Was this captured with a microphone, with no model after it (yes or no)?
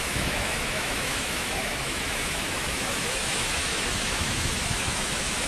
no